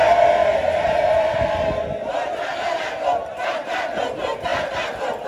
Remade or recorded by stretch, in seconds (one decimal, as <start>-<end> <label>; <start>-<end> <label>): 0.0-0.4 recorded; 0.4-1.5 remade; 1.5-3.2 recorded; 3.2-4.0 remade; 4.0-5.3 recorded